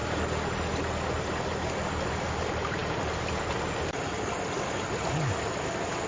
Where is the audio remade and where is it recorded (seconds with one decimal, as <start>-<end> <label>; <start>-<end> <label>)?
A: 0.0-6.1 recorded